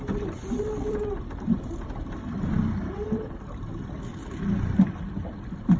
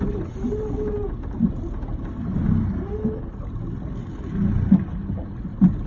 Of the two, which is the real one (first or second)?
second